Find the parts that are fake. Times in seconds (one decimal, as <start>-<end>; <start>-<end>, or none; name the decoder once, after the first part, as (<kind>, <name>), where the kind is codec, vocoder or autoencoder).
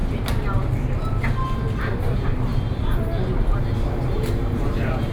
2.0-2.5 (vocoder, BigVGAN v2); 4.1-5.1